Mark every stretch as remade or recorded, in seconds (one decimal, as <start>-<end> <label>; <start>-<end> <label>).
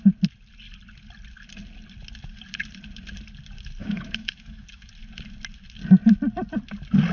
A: 0.0-3.8 recorded; 3.8-4.9 remade; 4.9-7.1 recorded